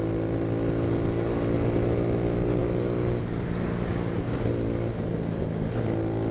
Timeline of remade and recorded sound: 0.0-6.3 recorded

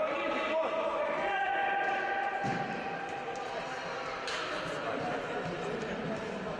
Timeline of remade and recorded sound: 0.0-6.6 recorded